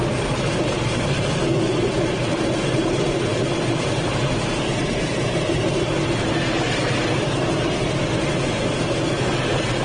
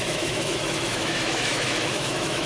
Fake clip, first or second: second